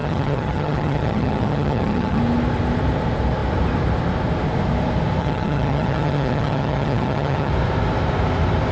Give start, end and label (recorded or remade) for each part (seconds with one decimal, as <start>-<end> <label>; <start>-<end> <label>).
0.0-2.2 remade; 2.2-5.2 recorded; 5.2-7.5 remade; 7.5-8.7 recorded